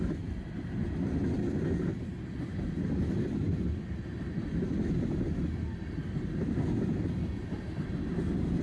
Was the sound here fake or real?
real